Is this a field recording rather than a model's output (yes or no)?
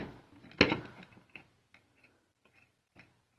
yes